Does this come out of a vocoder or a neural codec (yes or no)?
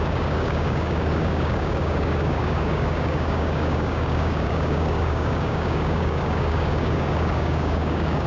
yes